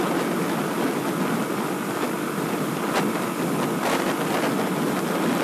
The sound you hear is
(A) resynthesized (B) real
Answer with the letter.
B